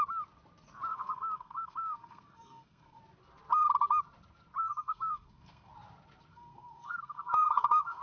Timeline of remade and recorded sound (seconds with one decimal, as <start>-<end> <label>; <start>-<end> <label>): 0.0-0.9 recorded; 0.9-3.0 remade; 3.0-4.6 recorded; 4.6-5.7 remade; 5.7-6.3 recorded; 6.3-8.0 remade